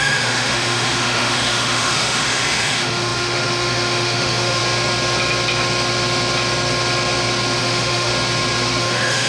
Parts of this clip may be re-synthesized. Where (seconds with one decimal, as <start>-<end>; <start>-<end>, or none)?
0.0-4.6; 7.6-8.1; 8.8-9.3